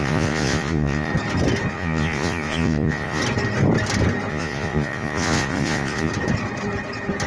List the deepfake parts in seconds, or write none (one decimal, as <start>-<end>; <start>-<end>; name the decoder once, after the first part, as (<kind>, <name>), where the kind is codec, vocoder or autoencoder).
0.0-1.1 (vocoder, Vocos); 1.7-3.2; 4.3-6.1